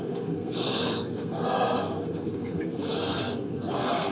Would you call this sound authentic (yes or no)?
no